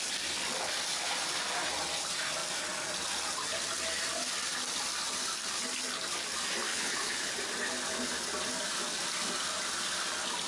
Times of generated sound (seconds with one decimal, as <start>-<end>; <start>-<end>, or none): 6.7-7.3

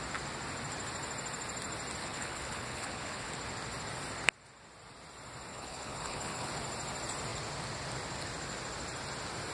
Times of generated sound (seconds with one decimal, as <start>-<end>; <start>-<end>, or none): 2.0-3.3; 5.5-6.5

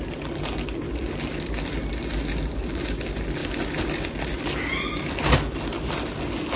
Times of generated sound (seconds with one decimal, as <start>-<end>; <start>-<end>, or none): none

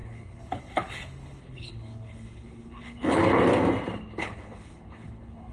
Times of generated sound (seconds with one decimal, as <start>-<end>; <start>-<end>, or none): 0.0-3.2; 4.2-5.5